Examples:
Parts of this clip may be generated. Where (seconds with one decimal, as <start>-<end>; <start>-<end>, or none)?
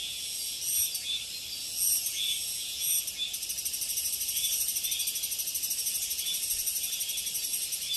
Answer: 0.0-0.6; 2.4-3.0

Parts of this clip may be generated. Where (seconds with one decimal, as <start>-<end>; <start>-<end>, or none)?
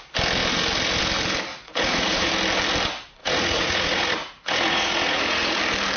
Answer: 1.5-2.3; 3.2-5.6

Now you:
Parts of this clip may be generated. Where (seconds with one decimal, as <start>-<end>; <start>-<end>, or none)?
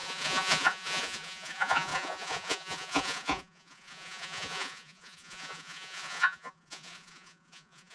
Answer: 0.0-7.9